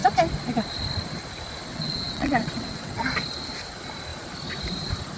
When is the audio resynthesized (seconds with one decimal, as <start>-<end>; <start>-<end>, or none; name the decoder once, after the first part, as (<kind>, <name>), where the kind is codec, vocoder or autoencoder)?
1.7-3.0 (vocoder, WaveNeXt)